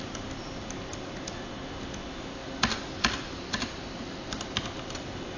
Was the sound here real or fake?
real